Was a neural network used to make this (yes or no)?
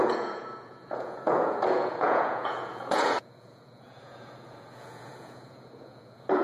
yes